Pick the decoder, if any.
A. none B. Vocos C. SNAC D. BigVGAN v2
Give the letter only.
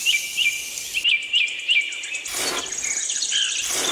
A